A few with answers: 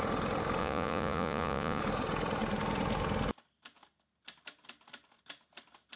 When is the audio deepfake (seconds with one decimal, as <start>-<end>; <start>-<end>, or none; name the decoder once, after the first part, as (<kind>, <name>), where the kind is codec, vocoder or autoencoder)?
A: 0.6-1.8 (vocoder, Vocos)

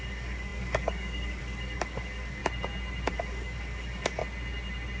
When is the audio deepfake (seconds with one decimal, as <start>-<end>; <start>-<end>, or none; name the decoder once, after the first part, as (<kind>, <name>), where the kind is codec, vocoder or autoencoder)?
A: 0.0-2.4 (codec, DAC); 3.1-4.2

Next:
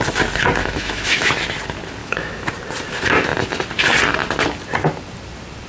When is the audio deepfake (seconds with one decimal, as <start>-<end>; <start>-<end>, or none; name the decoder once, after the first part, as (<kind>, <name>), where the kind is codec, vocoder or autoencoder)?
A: 0.6-1.3 (autoencoder, DAC-VAE); 2.0-2.5

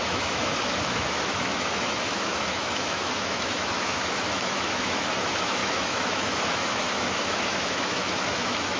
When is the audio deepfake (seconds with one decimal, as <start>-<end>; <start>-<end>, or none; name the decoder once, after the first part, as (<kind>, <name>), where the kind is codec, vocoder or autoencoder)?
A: 0.0-8.8 (autoencoder, DAC-VAE)

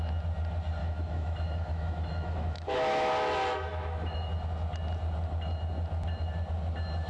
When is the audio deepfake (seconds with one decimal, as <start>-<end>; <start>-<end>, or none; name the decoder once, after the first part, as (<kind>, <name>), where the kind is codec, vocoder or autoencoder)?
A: 0.8-3.1 (autoencoder, DAC-VAE); 3.7-4.3